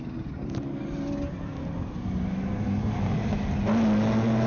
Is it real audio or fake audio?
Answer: real